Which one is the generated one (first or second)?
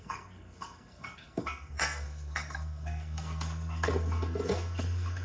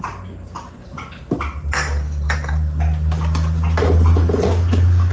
first